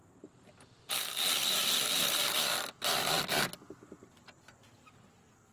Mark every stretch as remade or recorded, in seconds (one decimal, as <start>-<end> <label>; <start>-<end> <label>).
0.0-5.5 recorded